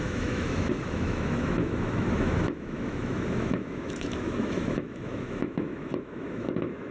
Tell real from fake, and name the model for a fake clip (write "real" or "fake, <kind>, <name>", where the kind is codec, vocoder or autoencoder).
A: fake, autoencoder, DAC-VAE